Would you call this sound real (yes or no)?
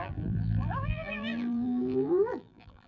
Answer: no